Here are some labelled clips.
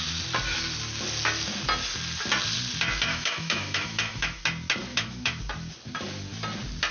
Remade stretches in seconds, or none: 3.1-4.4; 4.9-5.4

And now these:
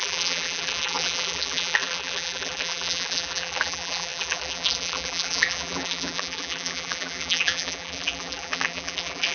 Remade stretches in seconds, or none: 0.0-9.3

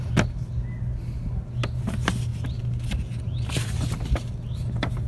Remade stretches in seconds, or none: 2.3-5.1

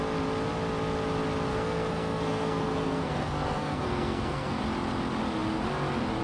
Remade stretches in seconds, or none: 1.5-4.6

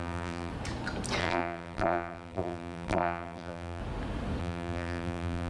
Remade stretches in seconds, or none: 0.0-0.5; 1.2-3.8; 4.4-5.5

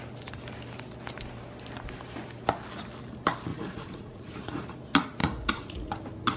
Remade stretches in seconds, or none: 3.5-4.8; 5.2-5.9